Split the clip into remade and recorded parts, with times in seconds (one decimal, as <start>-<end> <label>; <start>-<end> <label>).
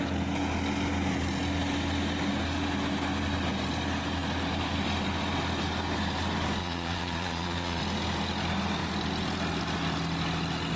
0.0-6.6 recorded; 6.6-7.8 remade; 7.8-10.8 recorded